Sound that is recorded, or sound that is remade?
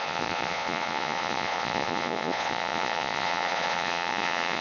remade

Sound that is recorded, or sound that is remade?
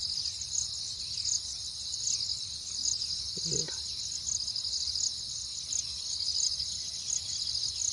recorded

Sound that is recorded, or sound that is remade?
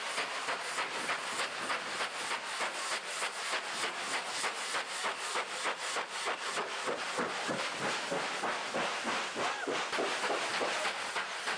recorded